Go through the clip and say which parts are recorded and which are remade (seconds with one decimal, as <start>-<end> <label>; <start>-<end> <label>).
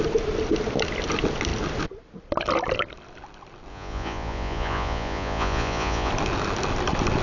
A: 0.0-3.7 recorded; 3.7-6.1 remade; 6.1-7.2 recorded